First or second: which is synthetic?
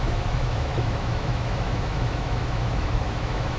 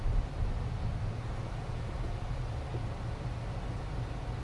first